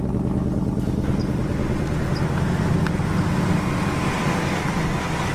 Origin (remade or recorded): recorded